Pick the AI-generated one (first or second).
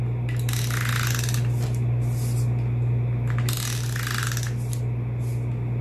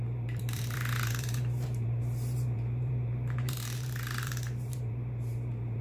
second